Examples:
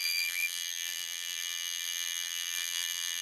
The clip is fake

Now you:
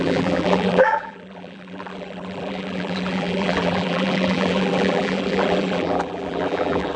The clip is fake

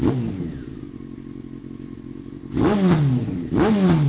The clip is real